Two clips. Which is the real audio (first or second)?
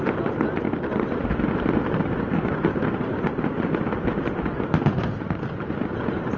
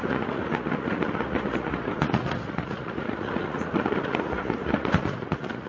first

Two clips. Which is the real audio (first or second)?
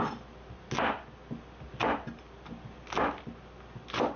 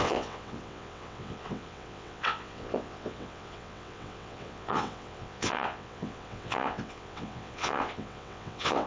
first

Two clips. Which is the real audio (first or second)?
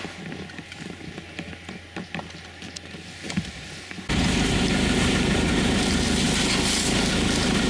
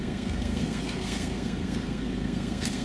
first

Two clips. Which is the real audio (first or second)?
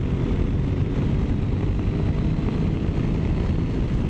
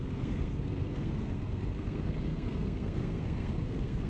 first